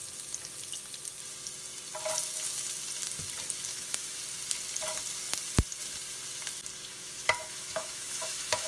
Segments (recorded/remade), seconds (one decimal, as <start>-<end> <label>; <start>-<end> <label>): 0.0-3.7 recorded; 3.7-4.2 remade; 4.2-6.9 recorded; 6.9-8.7 remade